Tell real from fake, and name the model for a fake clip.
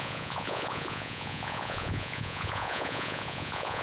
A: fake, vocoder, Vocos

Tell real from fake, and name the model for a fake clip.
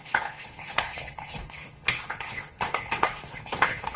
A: fake, codec, HILCodec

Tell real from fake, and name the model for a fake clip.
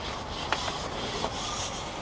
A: real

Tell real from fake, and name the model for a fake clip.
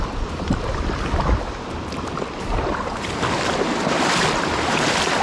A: real